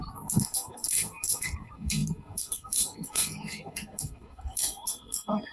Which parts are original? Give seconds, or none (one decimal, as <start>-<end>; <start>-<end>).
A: none